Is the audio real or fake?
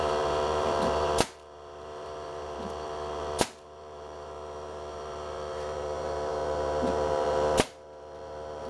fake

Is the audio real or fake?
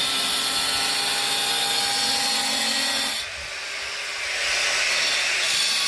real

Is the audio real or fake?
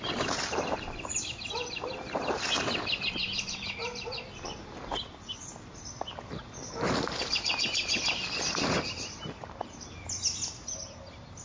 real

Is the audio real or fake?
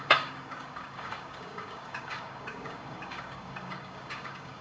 fake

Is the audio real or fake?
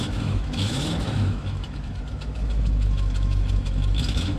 fake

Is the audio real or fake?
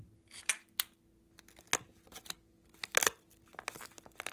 real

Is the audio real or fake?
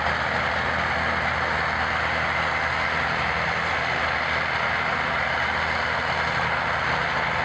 real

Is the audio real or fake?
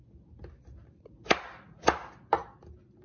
real